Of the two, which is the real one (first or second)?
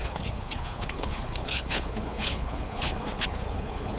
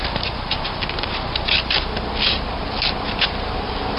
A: second